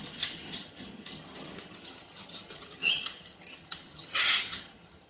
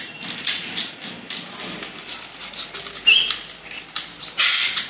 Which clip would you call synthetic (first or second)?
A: first